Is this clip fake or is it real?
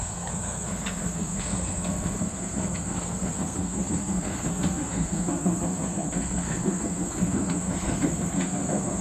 fake